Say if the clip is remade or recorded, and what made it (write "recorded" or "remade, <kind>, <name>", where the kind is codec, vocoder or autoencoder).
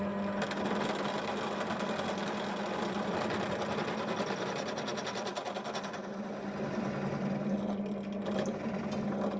recorded